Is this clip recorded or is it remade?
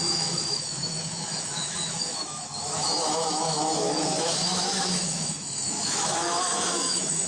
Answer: remade